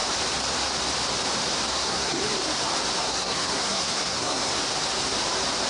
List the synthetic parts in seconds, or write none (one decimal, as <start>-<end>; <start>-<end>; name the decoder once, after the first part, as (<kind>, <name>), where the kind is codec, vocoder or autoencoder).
1.7-2.2 (codec, SNAC); 3.0-4.5